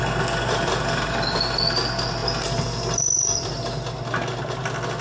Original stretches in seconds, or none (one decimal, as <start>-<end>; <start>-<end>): 0.0-5.0